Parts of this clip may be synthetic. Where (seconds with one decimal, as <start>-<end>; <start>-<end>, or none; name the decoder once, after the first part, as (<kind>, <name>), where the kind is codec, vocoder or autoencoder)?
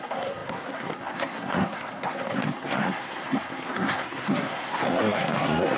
0.0-5.8 (codec, SNAC)